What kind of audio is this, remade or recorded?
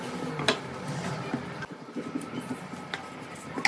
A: recorded